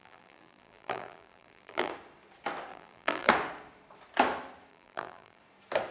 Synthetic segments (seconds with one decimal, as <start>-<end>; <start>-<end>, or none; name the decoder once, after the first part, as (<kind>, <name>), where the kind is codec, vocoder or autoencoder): 0.0-1.9 (vocoder, BigVGAN v2); 2.7-3.3; 4.7-5.4